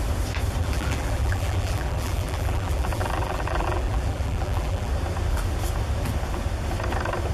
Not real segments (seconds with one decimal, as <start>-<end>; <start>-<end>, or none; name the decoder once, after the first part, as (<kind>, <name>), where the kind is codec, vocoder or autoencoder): 0.6-4.9 (vocoder, BigVGAN v2)